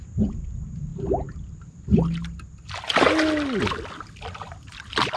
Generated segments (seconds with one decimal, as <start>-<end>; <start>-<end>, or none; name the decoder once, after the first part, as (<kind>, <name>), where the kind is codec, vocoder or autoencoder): none